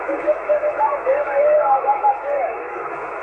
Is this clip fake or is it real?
fake